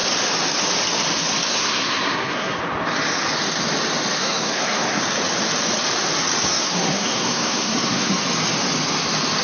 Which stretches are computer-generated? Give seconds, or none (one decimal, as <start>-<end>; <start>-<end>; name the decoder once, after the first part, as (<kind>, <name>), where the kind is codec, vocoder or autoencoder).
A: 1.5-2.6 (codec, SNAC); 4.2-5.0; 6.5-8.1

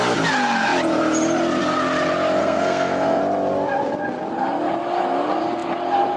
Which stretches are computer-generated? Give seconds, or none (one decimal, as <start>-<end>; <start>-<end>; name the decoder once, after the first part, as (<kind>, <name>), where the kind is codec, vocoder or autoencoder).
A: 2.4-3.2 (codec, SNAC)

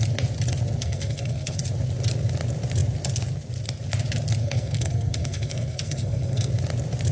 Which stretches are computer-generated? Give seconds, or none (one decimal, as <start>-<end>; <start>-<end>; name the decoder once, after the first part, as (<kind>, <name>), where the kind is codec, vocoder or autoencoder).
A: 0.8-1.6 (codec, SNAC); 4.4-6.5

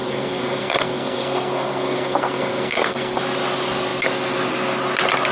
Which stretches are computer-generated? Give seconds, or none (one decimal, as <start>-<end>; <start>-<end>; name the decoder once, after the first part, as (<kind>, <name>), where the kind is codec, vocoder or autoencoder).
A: 0.0-3.2 (codec, SNAC)

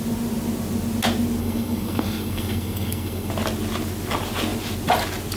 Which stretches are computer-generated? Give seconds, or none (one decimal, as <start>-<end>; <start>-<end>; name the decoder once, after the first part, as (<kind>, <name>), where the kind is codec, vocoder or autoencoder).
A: 1.4-3.3 (codec, SNAC)

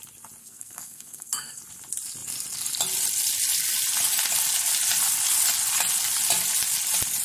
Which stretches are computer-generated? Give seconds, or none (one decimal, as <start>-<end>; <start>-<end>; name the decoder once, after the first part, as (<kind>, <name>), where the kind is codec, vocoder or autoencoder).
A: 0.4-1.6 (codec, SNAC)